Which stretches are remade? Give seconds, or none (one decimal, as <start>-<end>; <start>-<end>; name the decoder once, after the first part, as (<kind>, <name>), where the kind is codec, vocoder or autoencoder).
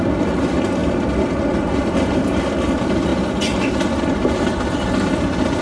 0.8-2.1 (vocoder, BigVGAN v2)